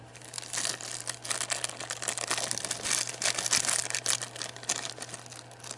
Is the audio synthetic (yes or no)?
no